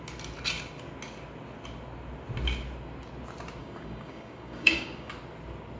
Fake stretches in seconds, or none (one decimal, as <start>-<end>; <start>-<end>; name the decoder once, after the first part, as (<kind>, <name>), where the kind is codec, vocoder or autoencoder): 3.6-5.1 (codec, DAC)

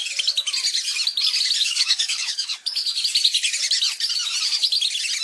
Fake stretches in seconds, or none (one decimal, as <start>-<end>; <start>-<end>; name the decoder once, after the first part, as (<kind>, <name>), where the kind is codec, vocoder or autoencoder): 1.6-2.8 (codec, DAC)